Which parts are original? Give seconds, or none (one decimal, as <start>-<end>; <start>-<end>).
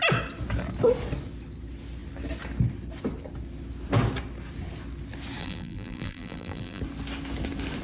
0.0-5.4; 6.8-7.8